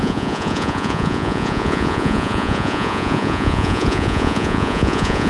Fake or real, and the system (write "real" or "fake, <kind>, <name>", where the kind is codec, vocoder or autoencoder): fake, vocoder, Vocos